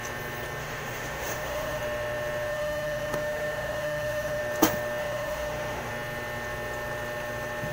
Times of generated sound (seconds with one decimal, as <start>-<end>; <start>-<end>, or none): 0.6-1.8; 2.5-4.4; 5.0-5.9